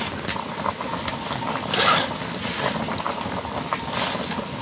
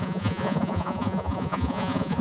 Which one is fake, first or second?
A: second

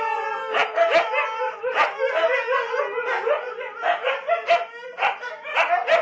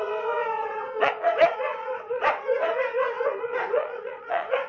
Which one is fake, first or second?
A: second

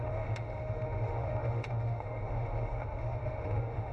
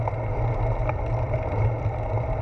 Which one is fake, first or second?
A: first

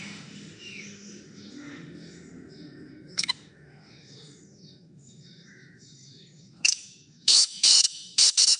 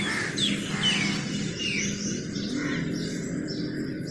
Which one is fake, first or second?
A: first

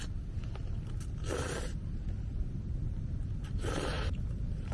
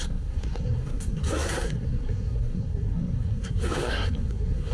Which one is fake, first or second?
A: second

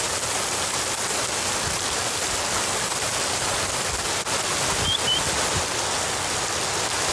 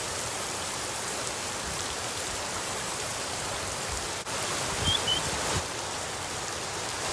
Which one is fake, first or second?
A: second